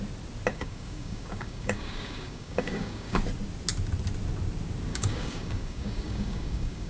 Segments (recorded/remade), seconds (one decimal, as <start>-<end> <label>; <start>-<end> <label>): 0.0-0.5 recorded; 0.5-3.2 remade; 3.2-4.9 recorded; 4.9-6.9 remade